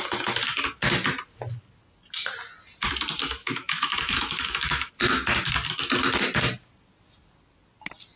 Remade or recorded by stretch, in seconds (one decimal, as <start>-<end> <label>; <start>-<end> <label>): 0.0-3.4 recorded; 3.4-4.9 remade; 4.9-8.2 recorded

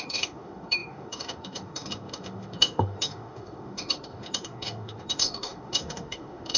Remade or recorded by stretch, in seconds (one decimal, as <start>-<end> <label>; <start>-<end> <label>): 0.0-6.6 remade

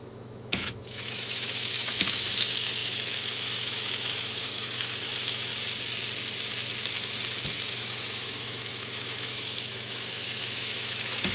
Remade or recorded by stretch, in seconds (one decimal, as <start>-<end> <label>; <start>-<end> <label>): 0.0-5.5 remade; 5.5-7.8 recorded; 7.8-11.3 remade